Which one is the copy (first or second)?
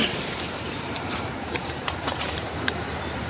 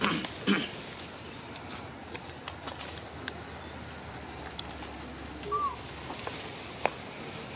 first